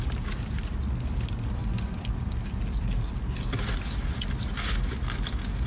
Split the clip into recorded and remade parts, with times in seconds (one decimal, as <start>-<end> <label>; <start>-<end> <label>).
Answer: 0.0-5.7 recorded